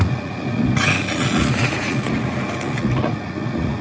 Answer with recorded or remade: remade